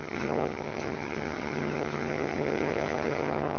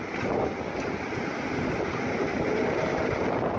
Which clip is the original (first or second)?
second